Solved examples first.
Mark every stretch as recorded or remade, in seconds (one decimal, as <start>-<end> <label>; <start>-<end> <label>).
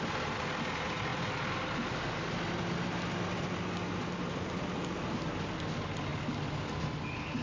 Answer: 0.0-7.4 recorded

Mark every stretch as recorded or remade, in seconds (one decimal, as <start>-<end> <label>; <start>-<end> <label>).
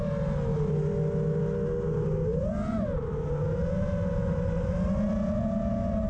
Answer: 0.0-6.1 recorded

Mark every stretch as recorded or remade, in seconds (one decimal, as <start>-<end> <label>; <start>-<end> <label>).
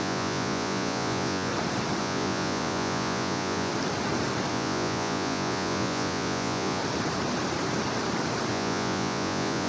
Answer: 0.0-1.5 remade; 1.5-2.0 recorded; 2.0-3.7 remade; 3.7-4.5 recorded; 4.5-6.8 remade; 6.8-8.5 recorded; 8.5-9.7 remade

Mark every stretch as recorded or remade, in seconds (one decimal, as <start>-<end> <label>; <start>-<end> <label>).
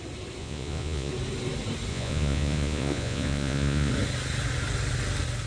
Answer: 0.0-0.4 recorded; 0.4-1.1 remade; 1.1-1.9 recorded; 1.9-3.9 remade; 3.9-5.5 recorded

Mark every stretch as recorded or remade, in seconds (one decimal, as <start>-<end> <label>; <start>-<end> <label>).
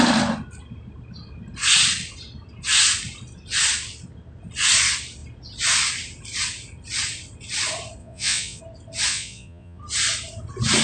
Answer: 0.0-8.0 recorded; 8.0-8.6 remade; 8.6-9.1 recorded; 9.1-9.8 remade; 9.8-10.8 recorded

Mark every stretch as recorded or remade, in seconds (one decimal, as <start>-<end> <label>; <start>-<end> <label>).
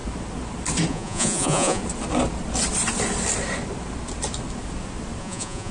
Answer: 0.0-0.9 recorded; 0.9-1.8 remade; 1.8-5.2 recorded; 5.2-5.7 remade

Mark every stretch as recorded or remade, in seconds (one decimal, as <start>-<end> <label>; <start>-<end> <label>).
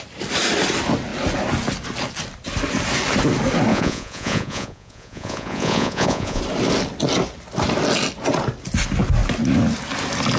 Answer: 0.0-3.7 recorded; 3.7-6.4 remade; 6.4-10.4 recorded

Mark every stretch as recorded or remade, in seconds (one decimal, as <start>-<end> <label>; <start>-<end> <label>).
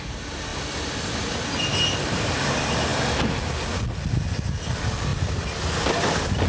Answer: 0.0-6.5 recorded